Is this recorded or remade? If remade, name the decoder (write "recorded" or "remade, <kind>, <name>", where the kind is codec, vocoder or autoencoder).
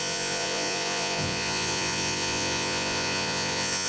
remade, vocoder, Vocos